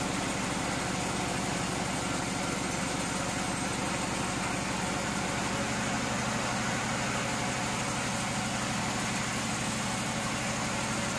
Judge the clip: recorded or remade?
recorded